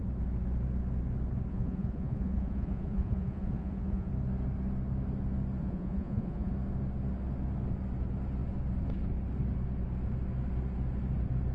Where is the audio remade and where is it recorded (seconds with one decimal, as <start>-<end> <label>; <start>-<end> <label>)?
0.0-1.5 recorded; 1.5-4.1 remade; 4.1-5.6 recorded; 5.6-6.5 remade; 6.5-11.5 recorded